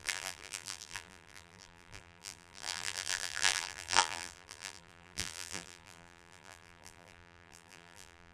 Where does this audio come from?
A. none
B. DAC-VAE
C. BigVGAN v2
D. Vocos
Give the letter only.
C